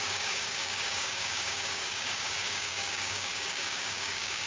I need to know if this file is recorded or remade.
remade